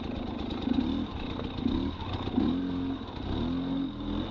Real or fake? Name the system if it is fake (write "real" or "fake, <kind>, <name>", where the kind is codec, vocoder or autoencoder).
real